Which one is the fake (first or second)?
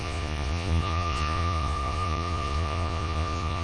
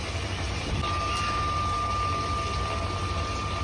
first